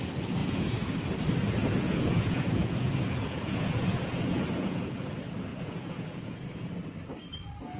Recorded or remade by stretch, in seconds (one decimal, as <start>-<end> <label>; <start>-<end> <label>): 0.0-0.4 recorded; 0.4-0.9 remade; 0.9-1.6 recorded; 1.6-4.9 remade; 4.9-5.5 recorded; 5.5-6.7 remade; 6.7-7.8 recorded